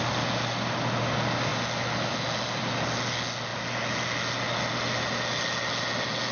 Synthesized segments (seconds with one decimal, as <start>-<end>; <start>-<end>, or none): none